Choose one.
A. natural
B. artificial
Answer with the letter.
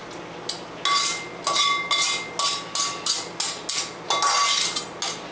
A